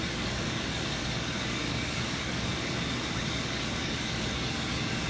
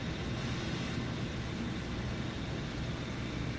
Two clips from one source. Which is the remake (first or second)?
first